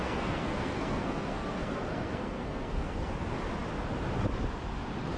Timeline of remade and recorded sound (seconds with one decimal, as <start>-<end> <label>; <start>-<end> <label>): 0.0-3.1 remade; 3.1-5.2 recorded